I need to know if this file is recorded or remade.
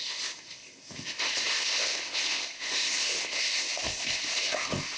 remade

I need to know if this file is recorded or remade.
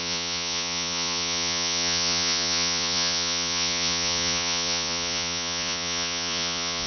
remade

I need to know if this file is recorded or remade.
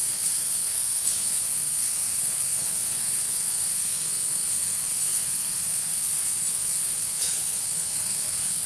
remade